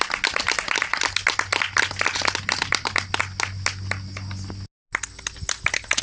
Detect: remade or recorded recorded